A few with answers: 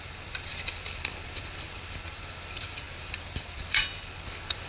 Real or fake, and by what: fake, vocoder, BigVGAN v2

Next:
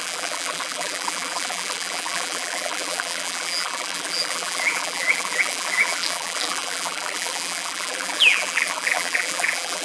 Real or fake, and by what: fake, vocoder, BigVGAN v2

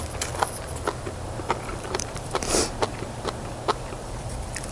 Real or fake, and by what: fake, vocoder, BigVGAN v2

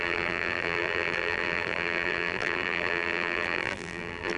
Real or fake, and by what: fake, vocoder, BigVGAN v2